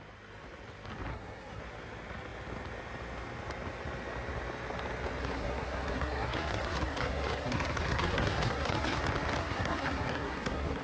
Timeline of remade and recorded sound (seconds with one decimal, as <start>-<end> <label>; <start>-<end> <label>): 0.0-1.1 recorded; 1.1-1.6 remade; 1.6-5.2 recorded; 5.2-9.0 remade; 9.0-9.4 recorded; 9.4-10.8 remade